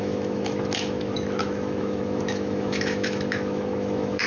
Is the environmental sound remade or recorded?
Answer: remade